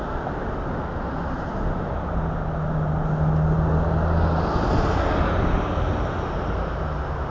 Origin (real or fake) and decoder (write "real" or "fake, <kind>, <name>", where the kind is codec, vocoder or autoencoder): real